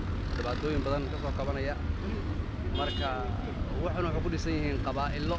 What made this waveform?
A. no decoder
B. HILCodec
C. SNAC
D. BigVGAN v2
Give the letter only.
A